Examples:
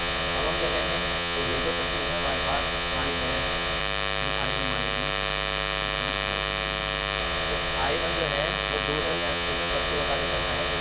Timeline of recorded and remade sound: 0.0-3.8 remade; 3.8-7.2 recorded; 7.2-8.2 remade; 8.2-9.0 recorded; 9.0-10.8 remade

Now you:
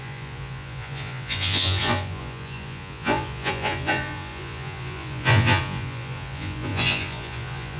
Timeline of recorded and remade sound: 0.0-7.8 remade